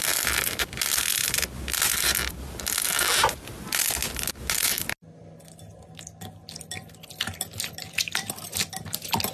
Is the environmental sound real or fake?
real